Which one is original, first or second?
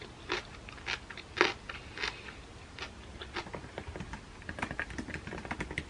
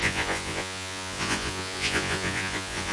first